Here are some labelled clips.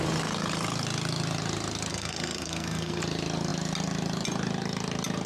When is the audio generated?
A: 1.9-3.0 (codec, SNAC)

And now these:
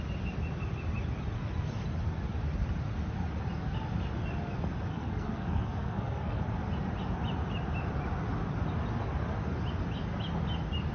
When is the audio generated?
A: 4.9-6.4 (codec, SNAC)

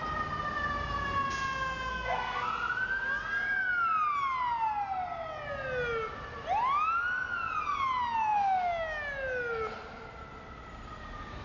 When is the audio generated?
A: 1.9-2.5 (codec, SNAC)

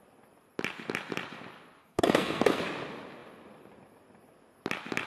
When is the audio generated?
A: 1.8-2.6 (codec, SNAC)

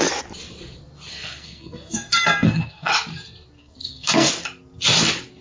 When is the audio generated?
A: 1.1-2.9 (codec, SNAC); 3.6-4.3

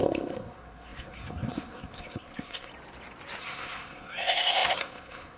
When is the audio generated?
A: 0.0-2.7 (codec, SNAC); 3.4-5.4